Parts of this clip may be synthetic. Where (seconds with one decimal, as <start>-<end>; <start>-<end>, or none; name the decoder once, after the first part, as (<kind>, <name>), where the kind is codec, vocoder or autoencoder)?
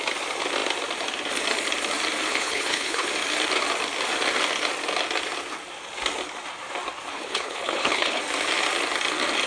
2.3-3.1 (codec, HILCodec); 7.1-8.2